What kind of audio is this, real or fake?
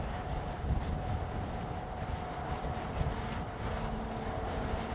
real